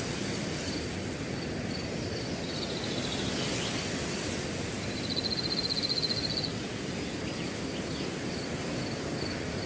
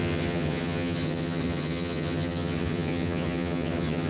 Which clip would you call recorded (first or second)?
first